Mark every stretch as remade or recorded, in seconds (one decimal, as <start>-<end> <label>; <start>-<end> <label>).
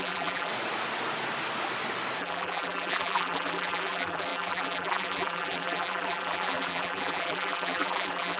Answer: 0.0-0.5 remade; 0.5-2.2 recorded; 2.2-8.4 remade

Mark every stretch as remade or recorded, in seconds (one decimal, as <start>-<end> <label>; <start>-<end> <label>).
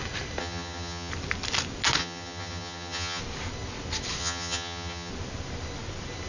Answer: 0.0-0.4 recorded; 0.4-1.1 remade; 1.1-2.0 recorded; 2.0-3.2 remade; 3.2-4.2 recorded; 4.2-5.1 remade; 5.1-6.3 recorded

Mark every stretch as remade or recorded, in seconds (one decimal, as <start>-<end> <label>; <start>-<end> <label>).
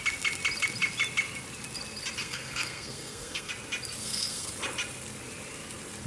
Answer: 0.0-2.2 recorded; 2.2-3.5 remade; 3.5-4.0 recorded; 4.0-4.5 remade; 4.5-6.1 recorded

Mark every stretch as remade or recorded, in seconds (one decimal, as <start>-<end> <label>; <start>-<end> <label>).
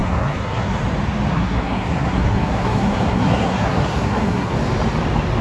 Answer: 0.0-0.8 remade; 0.8-1.3 recorded; 1.3-4.5 remade; 4.5-5.4 recorded